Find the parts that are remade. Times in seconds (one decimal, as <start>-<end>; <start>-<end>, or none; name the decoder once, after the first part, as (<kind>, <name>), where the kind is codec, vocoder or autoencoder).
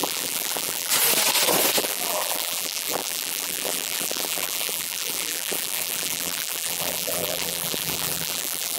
0.0-0.9 (vocoder, BigVGAN v2); 1.8-8.8